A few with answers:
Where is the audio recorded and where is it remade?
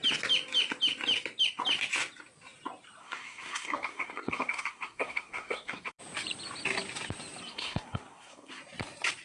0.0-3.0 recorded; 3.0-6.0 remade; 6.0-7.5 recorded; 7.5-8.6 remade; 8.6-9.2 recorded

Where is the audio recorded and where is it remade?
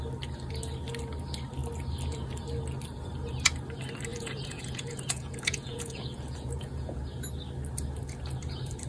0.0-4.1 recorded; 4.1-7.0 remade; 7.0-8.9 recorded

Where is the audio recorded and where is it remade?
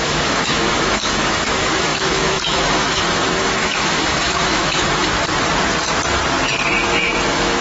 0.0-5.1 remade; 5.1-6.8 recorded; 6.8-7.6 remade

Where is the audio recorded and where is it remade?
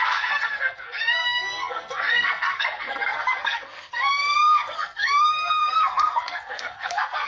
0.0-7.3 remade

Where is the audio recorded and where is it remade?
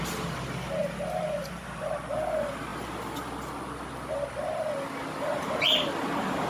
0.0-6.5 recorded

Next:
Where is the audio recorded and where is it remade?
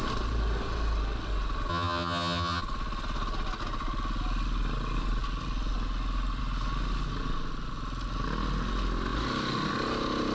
0.0-1.7 recorded; 1.7-2.6 remade; 2.6-10.3 recorded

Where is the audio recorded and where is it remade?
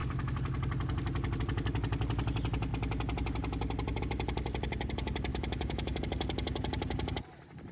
0.0-5.3 recorded; 5.3-6.0 remade; 6.0-7.7 recorded